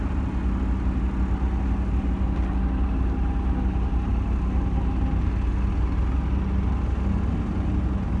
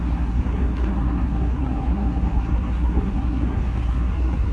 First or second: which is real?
first